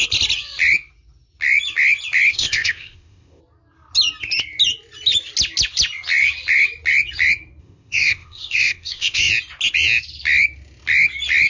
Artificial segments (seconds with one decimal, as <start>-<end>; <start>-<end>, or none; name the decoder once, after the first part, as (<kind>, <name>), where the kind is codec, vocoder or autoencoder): 2.3-3.4 (codec, ZipCodec); 7.6-9.3